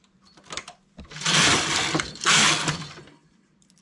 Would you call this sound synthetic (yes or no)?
no